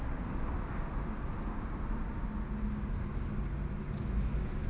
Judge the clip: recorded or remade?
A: recorded